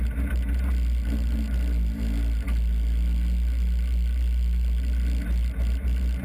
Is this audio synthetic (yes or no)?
no